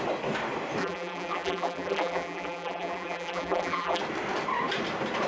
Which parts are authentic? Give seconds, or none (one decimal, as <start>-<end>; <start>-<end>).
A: 0.0-0.8; 4.0-5.3